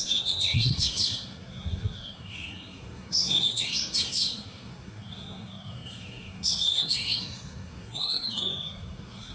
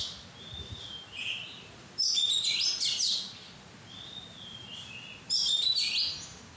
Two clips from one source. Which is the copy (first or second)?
first